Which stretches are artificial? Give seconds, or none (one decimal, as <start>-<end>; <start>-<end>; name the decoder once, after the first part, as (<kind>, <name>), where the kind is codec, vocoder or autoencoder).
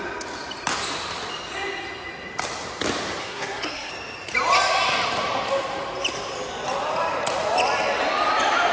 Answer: 3.2-3.9 (codec, SNAC)